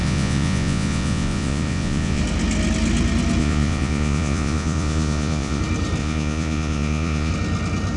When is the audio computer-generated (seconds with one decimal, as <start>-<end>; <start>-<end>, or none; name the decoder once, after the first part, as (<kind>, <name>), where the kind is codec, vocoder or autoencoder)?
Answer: 0.0-2.2 (vocoder, Vocos); 3.4-5.6; 6.0-7.3